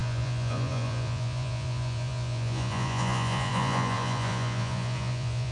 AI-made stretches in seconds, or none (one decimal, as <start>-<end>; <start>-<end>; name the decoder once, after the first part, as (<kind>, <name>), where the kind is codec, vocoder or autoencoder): 0.0-5.5 (vocoder, Vocos)